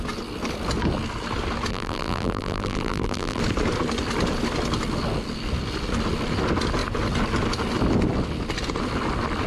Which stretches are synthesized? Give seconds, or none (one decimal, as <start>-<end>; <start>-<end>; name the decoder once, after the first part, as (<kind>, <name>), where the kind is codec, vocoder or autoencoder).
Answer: 1.7-3.4 (vocoder, BigVGAN v2)